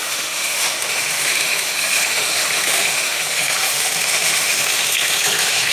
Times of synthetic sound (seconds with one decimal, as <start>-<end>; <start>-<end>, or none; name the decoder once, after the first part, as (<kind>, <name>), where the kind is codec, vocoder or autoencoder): 0.0-5.7 (autoencoder, DAC-VAE)